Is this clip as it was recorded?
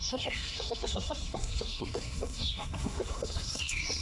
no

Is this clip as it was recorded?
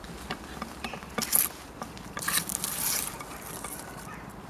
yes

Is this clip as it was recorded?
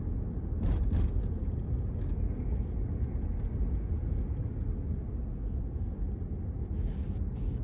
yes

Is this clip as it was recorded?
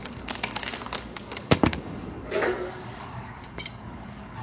no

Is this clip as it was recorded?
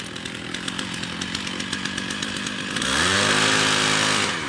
yes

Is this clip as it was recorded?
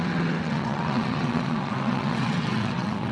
no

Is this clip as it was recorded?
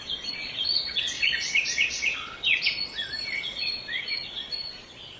no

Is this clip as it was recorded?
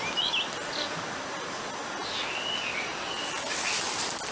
yes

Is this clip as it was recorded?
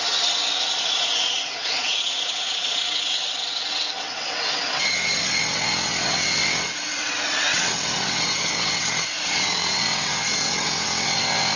no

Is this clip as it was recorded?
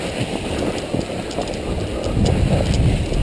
yes